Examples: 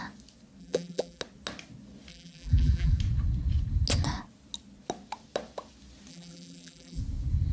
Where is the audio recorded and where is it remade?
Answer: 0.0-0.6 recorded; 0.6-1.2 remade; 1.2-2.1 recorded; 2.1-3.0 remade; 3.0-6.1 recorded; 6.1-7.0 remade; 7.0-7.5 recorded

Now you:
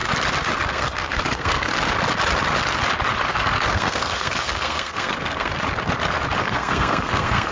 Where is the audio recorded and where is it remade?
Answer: 0.0-0.7 recorded; 0.7-1.7 remade; 1.7-3.3 recorded; 3.3-5.5 remade; 5.5-6.4 recorded; 6.4-7.5 remade

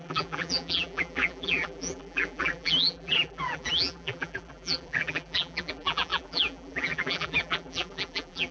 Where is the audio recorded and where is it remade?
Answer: 0.0-8.5 remade

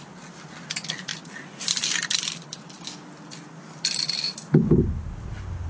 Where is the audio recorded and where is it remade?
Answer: 0.0-5.7 recorded

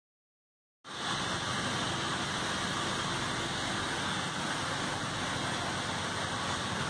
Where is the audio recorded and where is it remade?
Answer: 0.0-6.9 recorded

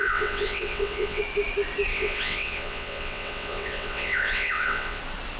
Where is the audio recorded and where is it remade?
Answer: 0.0-1.2 remade; 1.2-1.9 recorded; 1.9-5.0 remade; 5.0-5.4 recorded